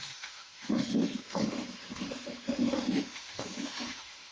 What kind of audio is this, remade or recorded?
remade